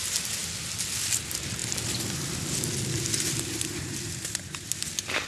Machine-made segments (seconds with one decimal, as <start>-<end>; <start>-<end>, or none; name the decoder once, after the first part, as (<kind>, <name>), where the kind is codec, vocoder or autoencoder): 3.7-4.7 (vocoder, BigVGAN v2)